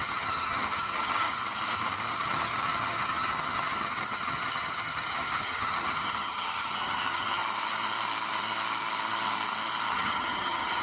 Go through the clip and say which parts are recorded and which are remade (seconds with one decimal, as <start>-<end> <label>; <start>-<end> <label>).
0.0-1.4 remade; 1.4-2.1 recorded; 2.1-7.4 remade; 7.4-9.9 recorded; 9.9-10.8 remade